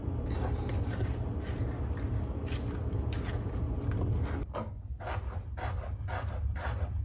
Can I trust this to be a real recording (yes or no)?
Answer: yes